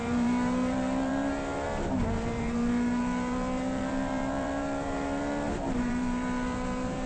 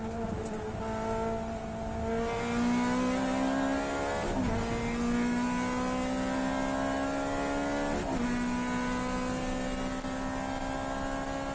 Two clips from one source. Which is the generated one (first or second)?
first